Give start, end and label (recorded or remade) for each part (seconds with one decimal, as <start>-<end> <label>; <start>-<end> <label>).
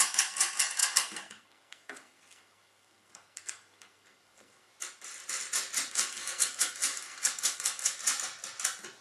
0.0-4.7 remade; 4.7-5.9 recorded; 5.9-8.0 remade; 8.0-9.0 recorded